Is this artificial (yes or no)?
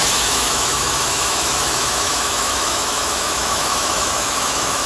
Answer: yes